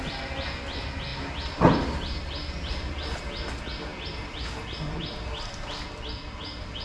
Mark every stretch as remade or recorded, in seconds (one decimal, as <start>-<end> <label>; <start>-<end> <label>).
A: 0.0-6.8 recorded